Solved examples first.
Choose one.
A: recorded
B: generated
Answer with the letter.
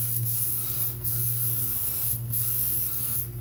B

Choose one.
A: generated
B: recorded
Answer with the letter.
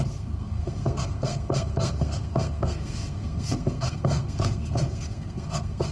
A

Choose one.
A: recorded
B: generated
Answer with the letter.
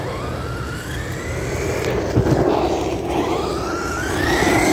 A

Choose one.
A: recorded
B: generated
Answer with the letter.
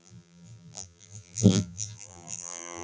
B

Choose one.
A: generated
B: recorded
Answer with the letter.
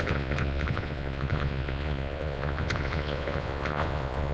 A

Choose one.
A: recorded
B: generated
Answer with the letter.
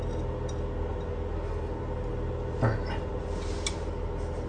A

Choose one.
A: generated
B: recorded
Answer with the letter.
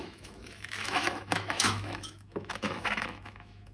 A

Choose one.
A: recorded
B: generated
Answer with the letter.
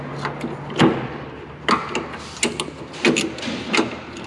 A